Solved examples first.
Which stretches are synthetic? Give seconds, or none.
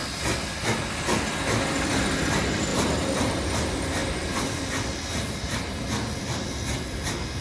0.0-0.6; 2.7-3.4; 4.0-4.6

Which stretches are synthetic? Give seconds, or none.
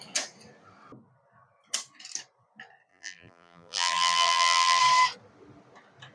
2.9-4.8